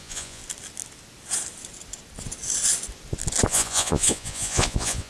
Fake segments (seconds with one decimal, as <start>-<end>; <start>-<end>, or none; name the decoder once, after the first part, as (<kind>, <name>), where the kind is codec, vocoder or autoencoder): 0.0-0.4 (vocoder, Vocos); 3.5-5.1